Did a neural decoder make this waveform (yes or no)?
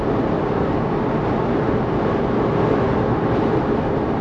no